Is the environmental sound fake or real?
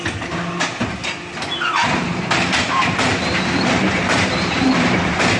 fake